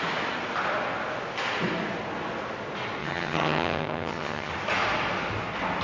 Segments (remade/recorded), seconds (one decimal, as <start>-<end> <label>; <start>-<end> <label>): 0.0-3.0 recorded; 3.0-4.5 remade; 4.5-5.8 recorded